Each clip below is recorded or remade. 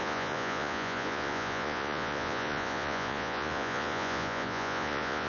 remade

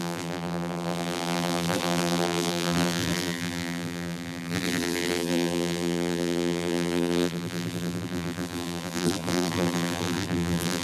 remade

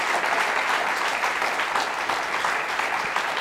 recorded